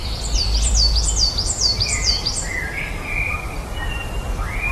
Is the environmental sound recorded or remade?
remade